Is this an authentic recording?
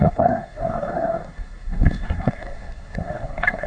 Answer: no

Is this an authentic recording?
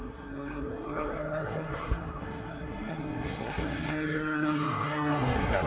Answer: no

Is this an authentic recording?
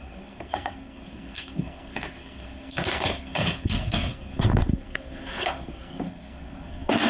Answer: no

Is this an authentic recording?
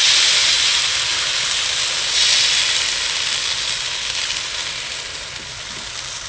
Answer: yes